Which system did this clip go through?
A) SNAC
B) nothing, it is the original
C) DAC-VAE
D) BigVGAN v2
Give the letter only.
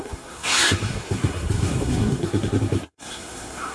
A